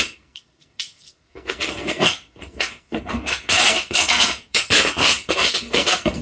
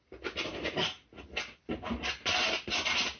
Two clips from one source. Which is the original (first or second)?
second